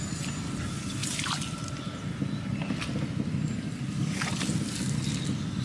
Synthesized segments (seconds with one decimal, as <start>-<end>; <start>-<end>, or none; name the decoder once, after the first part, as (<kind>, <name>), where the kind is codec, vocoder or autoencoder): none